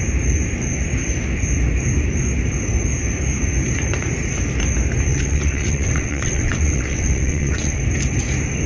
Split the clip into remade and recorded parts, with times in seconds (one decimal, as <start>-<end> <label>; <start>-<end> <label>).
0.0-5.1 recorded; 5.1-7.8 remade; 7.8-8.7 recorded